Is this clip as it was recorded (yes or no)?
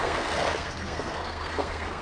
no